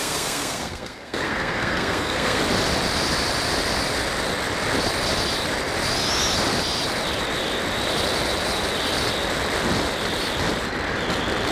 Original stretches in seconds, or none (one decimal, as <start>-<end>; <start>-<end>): 2.4-11.5